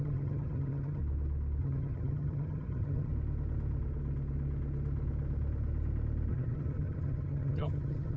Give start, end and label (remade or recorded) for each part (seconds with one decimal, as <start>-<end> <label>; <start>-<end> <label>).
0.0-1.0 remade; 1.0-1.6 recorded; 1.6-3.1 remade; 3.1-6.3 recorded; 6.3-8.2 remade